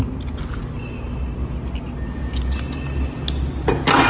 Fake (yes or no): no